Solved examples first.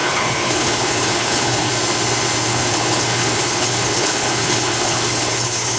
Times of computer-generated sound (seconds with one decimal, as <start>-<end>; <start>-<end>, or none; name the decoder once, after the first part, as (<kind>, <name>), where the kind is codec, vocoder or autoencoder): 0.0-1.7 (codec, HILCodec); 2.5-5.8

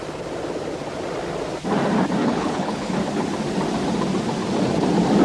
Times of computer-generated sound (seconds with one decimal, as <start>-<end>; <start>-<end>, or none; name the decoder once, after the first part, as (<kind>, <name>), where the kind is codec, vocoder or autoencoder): 2.2-2.9 (codec, HILCodec)

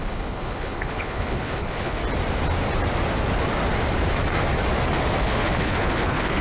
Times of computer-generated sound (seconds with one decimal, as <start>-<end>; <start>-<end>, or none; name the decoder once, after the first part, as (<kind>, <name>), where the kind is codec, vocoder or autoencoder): 0.0-2.0 (codec, HILCodec); 5.2-6.4

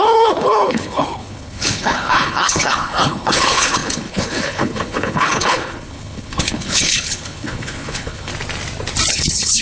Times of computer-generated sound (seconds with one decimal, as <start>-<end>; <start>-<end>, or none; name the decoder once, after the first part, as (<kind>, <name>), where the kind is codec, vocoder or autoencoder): 0.0-8.3 (codec, HILCodec); 9.1-9.6

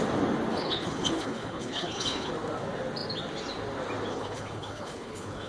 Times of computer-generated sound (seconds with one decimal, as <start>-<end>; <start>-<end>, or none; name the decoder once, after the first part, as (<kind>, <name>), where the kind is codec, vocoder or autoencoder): 0.5-2.3 (codec, HILCodec); 4.1-5.5

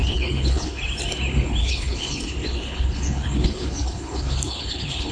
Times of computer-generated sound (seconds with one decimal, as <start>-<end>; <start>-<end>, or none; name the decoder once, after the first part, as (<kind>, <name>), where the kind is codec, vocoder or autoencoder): 0.0-0.8 (codec, HILCodec); 1.6-5.1

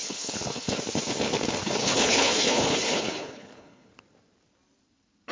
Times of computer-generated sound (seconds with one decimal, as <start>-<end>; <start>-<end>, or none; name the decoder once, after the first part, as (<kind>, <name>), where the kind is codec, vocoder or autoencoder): 0.0-0.8 (codec, HILCodec); 1.6-3.9

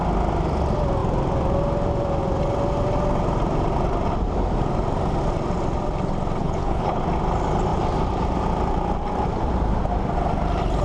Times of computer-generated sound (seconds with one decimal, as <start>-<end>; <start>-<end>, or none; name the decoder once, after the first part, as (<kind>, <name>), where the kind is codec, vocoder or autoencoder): 6.4-7.0 (codec, HILCodec)